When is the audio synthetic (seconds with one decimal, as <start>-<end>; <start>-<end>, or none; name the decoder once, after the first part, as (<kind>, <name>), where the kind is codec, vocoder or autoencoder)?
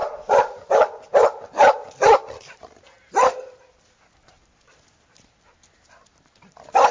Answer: 0.0-0.5 (vocoder, Vocos)